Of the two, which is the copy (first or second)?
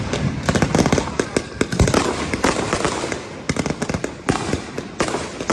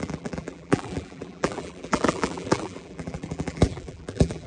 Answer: second